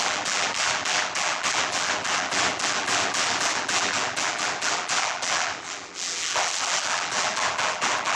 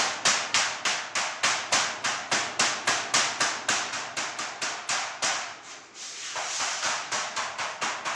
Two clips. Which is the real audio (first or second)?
second